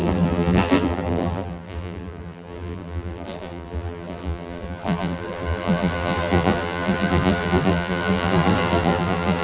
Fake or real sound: fake